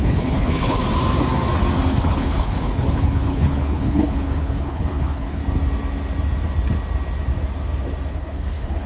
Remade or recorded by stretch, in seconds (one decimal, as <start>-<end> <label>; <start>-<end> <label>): 0.0-0.8 remade; 0.8-1.9 recorded; 1.9-5.4 remade; 5.4-8.1 recorded; 8.1-8.9 remade